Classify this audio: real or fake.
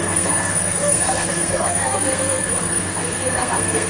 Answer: fake